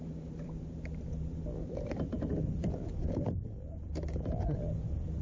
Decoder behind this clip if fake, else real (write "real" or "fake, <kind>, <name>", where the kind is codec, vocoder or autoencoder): fake, vocoder, BigVGAN v2